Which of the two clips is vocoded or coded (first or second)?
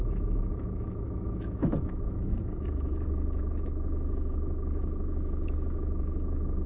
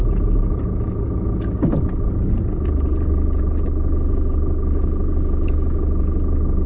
first